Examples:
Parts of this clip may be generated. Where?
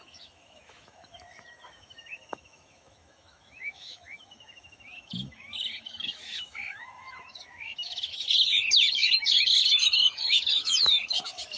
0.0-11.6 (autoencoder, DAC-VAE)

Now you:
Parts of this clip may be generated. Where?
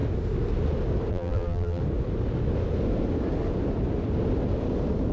1.1-1.8 (vocoder, BigVGAN v2)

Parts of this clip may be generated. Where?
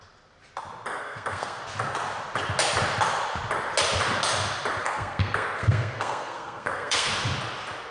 1.0-1.6 (codec, SNAC); 4.8-7.1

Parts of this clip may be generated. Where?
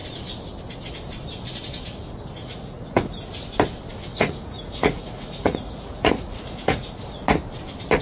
2.4-3.2 (vocoder, Vocos); 4.1-7.0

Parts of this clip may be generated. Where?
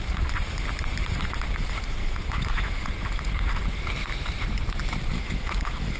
2.0-2.8 (autoencoder, DAC-VAE); 5.1-6.0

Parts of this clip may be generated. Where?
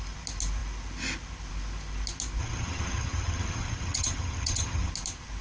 2.4-4.9 (vocoder, HiFi-GAN)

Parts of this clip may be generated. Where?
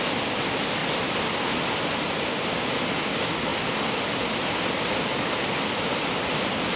none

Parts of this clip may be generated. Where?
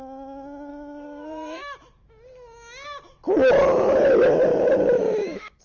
0.7-2.1 (autoencoder, DAC-VAE); 4.5-5.6